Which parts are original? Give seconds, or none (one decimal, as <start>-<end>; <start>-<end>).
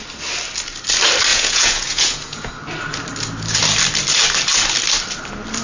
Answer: 0.0-1.3; 2.5-5.6